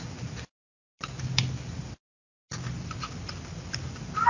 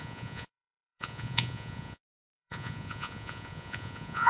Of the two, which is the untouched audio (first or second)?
first